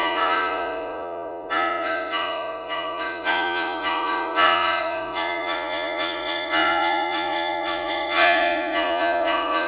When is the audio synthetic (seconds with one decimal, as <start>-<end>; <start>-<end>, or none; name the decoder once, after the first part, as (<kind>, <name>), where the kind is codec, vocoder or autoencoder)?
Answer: 0.0-9.7 (vocoder, Vocos)